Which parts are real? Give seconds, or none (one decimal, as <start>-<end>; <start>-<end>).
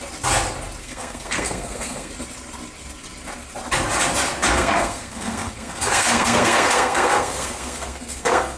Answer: 0.0-0.8; 2.1-4.5